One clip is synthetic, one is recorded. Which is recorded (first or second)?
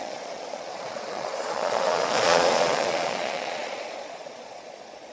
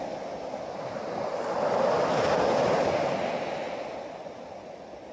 second